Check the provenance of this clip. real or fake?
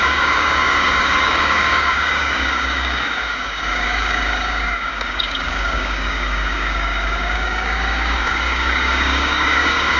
fake